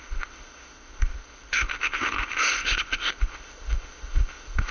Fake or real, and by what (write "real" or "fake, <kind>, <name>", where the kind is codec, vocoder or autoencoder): fake, codec, ZipCodec